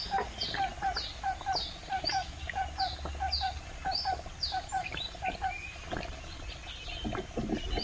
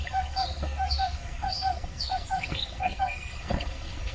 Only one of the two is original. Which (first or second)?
first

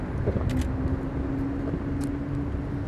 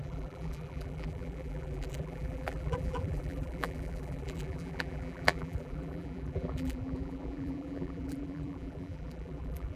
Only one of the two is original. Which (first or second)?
first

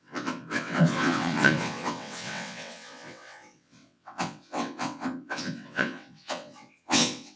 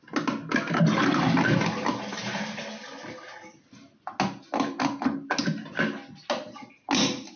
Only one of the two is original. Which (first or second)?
second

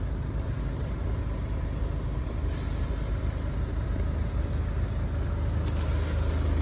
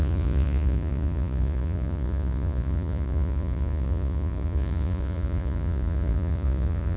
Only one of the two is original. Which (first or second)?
first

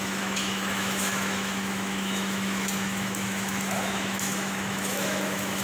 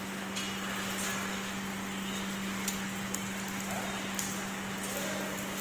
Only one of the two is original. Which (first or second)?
second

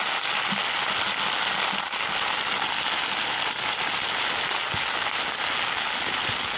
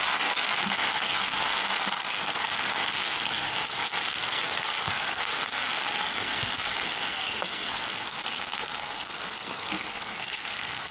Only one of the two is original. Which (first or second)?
first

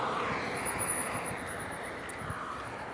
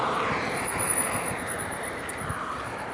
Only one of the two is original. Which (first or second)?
first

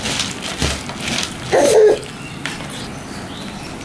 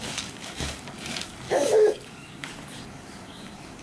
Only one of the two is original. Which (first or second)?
first